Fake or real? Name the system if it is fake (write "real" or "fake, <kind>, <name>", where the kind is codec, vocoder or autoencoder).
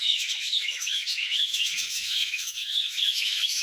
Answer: fake, autoencoder, DAC-VAE